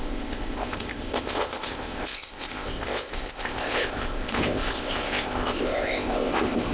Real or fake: fake